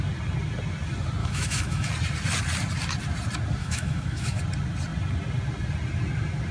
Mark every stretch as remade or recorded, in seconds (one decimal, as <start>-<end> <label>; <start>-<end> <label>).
0.0-1.2 recorded; 1.2-1.9 remade; 1.9-3.6 recorded; 3.6-4.4 remade; 4.4-6.5 recorded